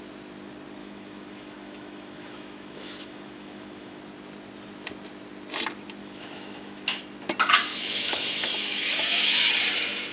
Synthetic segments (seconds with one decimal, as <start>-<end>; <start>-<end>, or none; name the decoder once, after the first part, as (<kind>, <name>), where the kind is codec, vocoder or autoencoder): 0.8-4.0 (autoencoder, DAC-VAE); 6.0-7.0; 7.7-9.5